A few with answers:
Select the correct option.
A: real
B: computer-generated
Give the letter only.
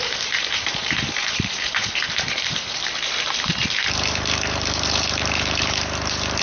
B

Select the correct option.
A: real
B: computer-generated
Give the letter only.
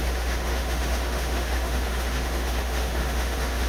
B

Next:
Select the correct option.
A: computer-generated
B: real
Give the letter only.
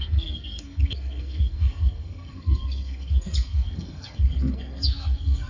A